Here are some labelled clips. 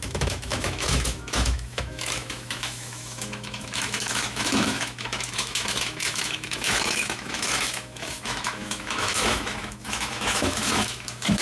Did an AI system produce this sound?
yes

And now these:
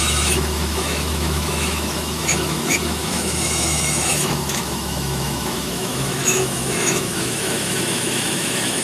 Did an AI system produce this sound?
yes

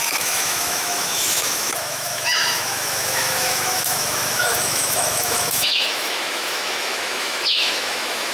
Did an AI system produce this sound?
yes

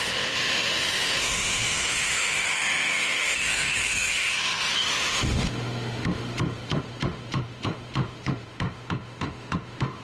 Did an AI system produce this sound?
yes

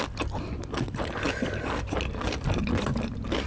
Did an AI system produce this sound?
no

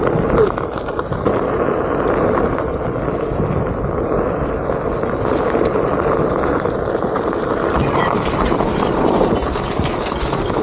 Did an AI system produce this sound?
no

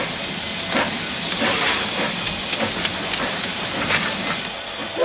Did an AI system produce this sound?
no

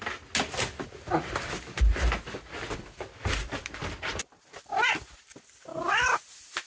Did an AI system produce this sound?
no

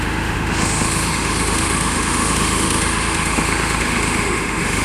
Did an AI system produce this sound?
yes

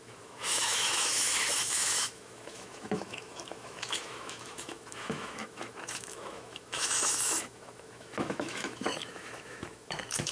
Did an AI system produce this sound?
yes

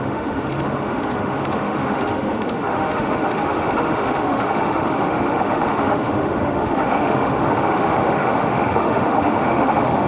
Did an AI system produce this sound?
yes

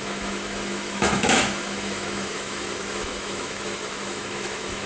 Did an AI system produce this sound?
yes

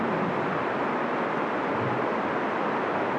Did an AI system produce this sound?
no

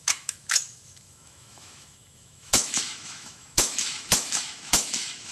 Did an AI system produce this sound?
yes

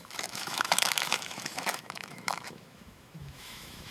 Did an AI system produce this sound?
yes